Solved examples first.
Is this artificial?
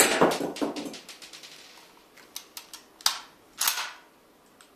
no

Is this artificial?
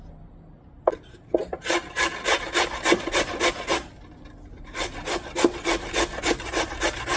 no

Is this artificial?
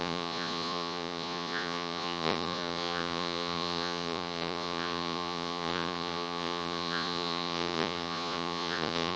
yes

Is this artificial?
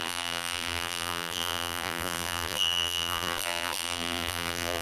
yes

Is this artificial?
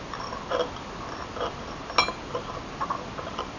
no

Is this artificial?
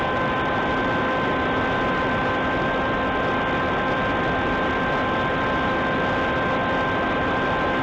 no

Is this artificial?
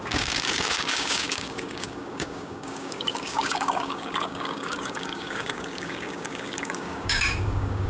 yes